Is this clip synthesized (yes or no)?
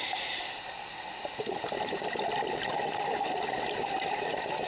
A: no